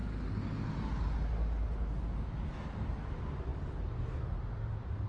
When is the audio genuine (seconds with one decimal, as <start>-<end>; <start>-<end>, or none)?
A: 0.0-5.1